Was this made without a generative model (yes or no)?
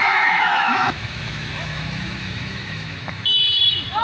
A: no